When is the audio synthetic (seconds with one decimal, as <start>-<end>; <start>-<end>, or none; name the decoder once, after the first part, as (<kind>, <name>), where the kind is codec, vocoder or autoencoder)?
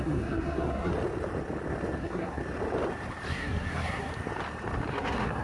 0.0-0.9 (codec, SNAC); 2.0-2.4; 3.3-4.1; 4.9-5.4